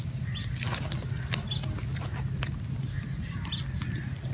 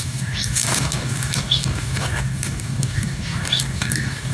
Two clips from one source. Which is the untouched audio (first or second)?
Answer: first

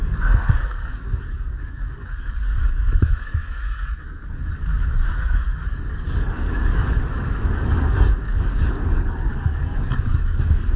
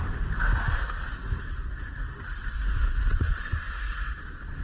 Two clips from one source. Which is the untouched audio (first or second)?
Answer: second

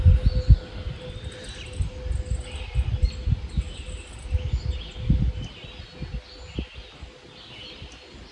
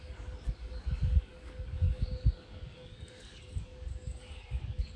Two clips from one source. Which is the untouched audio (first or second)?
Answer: first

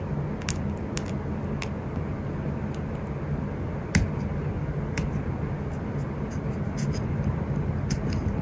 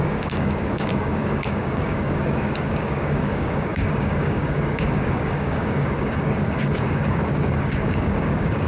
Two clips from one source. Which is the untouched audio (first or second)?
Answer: first